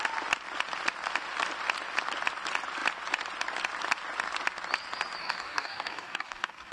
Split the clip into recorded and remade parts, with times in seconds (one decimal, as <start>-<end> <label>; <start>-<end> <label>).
0.0-5.2 recorded; 5.2-6.7 remade